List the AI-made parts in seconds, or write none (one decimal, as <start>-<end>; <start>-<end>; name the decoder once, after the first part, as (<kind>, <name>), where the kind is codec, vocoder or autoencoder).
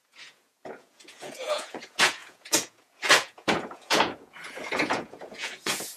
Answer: 0.0-6.0 (vocoder, Vocos)